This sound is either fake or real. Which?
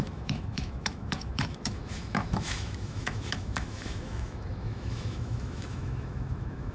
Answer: fake